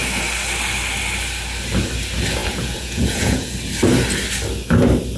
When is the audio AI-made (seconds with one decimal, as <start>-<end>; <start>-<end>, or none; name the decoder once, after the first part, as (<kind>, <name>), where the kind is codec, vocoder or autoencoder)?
2.4-3.5 (vocoder, Vocos)